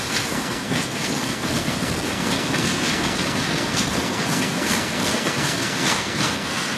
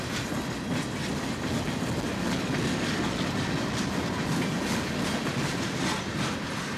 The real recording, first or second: second